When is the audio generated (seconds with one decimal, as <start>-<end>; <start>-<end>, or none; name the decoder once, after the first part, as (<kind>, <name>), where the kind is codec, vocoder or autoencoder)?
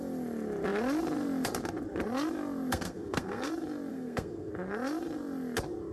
2.7-3.5 (codec, SNAC); 3.9-4.5